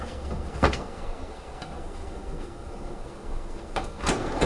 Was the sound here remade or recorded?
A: remade